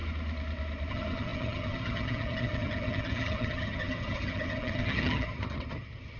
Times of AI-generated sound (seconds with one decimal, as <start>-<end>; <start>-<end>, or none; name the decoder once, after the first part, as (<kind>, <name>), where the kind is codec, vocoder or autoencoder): 0.9-6.2 (vocoder, HiFi-GAN)

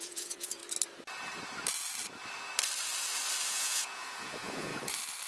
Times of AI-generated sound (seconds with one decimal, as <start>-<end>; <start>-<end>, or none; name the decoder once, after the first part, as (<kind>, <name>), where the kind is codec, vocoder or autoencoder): 0.0-0.6 (vocoder, Vocos); 3.5-4.7